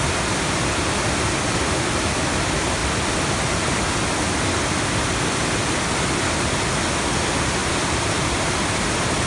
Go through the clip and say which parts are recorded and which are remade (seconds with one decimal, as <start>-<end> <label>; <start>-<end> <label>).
0.0-7.6 recorded; 7.6-8.5 remade; 8.5-9.3 recorded